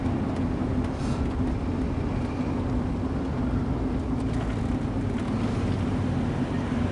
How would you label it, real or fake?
real